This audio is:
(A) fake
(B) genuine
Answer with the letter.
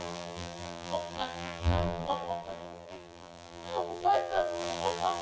A